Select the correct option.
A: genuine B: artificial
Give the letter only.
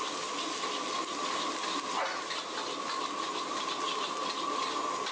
A